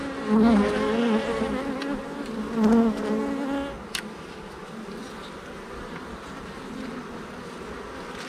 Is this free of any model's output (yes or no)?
yes